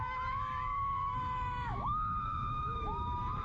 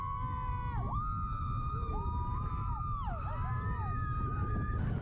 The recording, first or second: second